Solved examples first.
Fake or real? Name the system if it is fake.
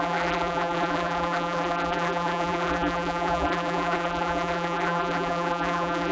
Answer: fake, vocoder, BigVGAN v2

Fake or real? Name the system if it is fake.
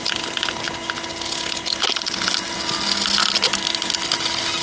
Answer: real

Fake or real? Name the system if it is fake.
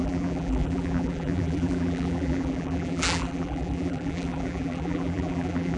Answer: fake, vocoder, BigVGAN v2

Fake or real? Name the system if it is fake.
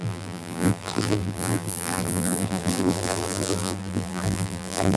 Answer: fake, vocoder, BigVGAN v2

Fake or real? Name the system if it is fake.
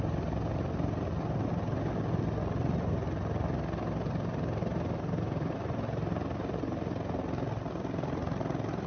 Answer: real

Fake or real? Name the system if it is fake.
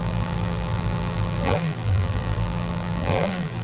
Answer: fake, vocoder, BigVGAN v2